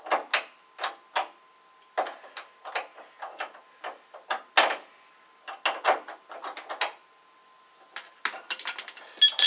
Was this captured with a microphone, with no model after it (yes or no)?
yes